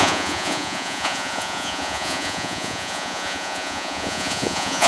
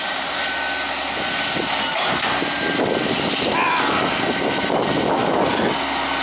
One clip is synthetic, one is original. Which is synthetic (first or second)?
first